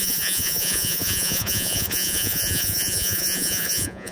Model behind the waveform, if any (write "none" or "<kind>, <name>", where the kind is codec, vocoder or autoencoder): vocoder, Vocos